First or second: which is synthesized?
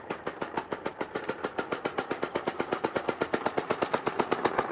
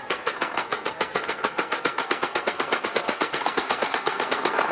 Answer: second